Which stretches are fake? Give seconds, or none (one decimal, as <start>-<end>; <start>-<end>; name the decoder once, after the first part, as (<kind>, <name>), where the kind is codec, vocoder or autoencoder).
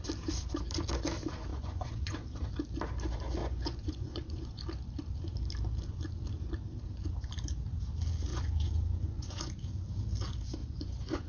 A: 1.5-2.5 (vocoder, Vocos); 3.4-4.6; 8.3-9.5; 10.6-11.3